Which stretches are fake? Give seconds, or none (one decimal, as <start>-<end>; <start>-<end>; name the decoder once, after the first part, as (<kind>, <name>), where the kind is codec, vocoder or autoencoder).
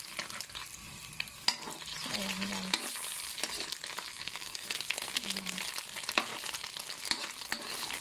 4.1-5.6 (codec, SNAC)